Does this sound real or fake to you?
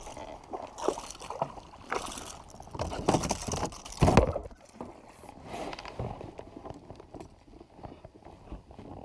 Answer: real